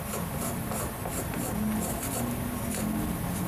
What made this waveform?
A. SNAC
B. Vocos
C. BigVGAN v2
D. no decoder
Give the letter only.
D